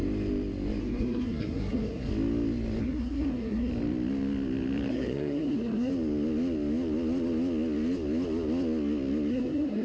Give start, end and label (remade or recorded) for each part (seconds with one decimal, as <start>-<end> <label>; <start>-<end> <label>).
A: 0.0-0.8 recorded; 0.8-2.1 remade; 2.1-2.8 recorded; 2.8-3.7 remade; 3.7-4.9 recorded; 4.9-5.9 remade; 5.9-9.3 recorded; 9.3-9.8 remade